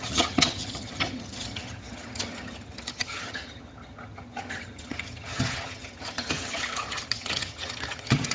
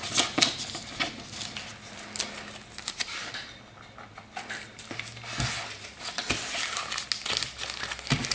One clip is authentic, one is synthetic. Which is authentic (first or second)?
second